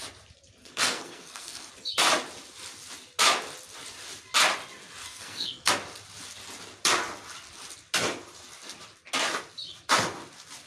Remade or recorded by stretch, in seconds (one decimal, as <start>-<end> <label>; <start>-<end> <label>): 0.0-0.6 recorded; 0.6-1.7 remade; 1.7-5.0 recorded; 5.0-5.7 remade; 5.7-10.7 recorded

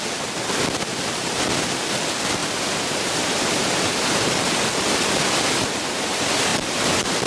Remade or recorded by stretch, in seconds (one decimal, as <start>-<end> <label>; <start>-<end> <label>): 0.0-0.9 recorded; 0.9-1.4 remade; 1.4-2.4 recorded; 2.4-4.3 remade; 4.3-6.5 recorded; 6.5-7.3 remade